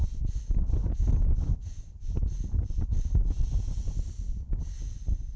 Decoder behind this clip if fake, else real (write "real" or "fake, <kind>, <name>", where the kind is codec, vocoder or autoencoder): real